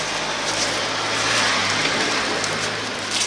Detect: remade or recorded recorded